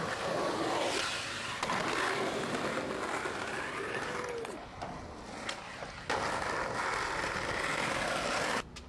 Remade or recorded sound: recorded